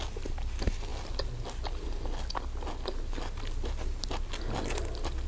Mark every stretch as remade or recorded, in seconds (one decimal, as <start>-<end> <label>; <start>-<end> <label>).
0.0-5.3 recorded